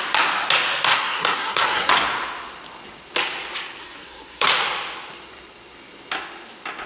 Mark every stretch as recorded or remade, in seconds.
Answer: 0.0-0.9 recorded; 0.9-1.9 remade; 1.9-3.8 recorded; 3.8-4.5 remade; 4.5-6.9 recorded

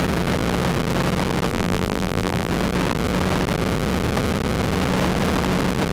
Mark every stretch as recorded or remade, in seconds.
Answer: 0.0-1.5 recorded; 1.5-2.5 remade; 2.5-5.9 recorded